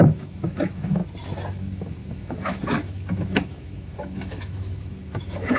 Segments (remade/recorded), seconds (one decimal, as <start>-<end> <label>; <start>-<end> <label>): 0.0-1.0 remade; 1.0-1.6 recorded; 1.6-5.6 remade